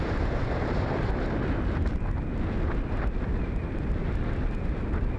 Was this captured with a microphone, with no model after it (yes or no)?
yes